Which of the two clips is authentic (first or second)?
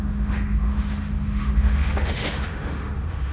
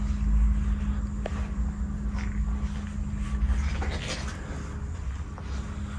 second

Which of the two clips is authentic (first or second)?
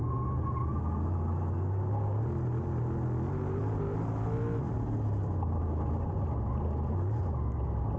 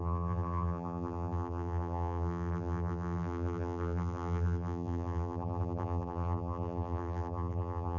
first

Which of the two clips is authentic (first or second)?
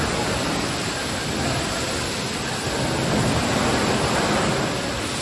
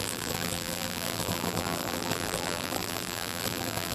first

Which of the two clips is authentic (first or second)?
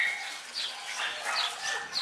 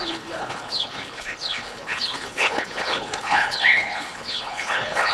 first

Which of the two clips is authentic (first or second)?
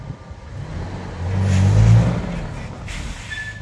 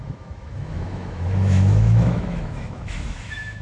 first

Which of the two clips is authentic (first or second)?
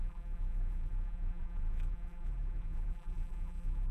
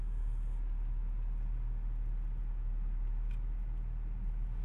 second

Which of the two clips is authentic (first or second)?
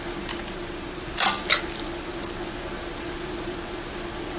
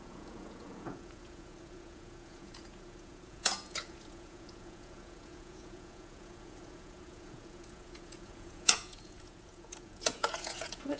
first